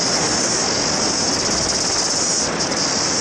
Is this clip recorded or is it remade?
recorded